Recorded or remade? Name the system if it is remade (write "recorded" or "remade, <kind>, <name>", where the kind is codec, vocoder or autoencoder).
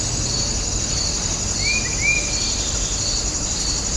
recorded